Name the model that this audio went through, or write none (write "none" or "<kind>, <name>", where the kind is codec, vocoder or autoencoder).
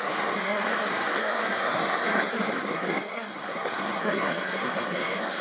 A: codec, SNAC